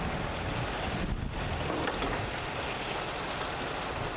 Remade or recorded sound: recorded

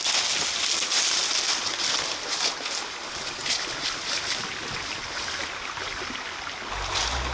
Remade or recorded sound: recorded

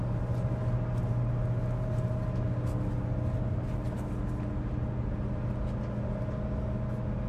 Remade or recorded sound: recorded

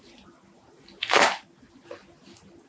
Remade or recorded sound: recorded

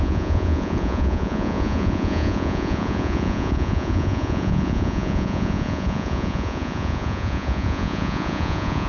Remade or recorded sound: remade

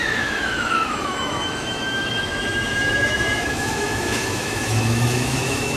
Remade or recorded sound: remade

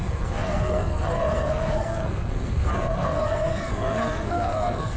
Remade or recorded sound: remade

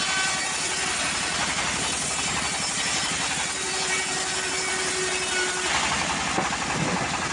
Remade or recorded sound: recorded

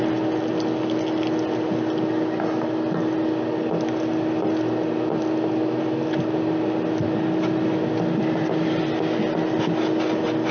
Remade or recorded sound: recorded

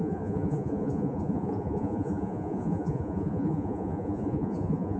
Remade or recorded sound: remade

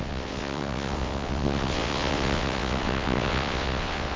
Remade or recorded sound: remade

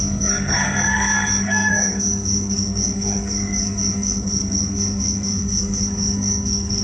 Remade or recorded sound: remade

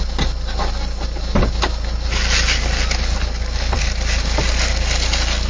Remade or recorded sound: recorded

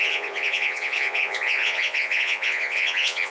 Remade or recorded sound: remade